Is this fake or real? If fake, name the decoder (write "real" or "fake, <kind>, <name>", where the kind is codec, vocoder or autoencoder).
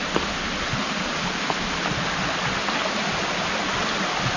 real